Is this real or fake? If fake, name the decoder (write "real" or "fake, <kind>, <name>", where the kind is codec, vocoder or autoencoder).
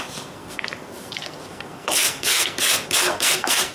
fake, codec, SNAC